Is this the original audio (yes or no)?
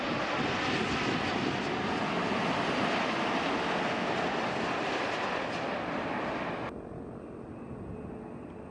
yes